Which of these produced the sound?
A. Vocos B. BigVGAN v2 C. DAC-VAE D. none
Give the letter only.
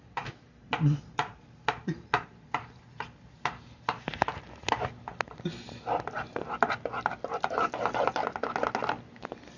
D